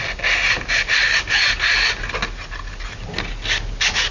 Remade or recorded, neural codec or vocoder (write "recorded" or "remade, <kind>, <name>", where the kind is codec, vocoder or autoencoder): recorded